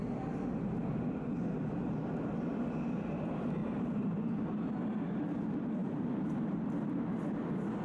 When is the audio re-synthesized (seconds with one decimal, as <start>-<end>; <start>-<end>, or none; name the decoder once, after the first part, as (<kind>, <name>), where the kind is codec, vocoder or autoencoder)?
3.6-4.3 (vocoder, BigVGAN v2); 5.8-7.2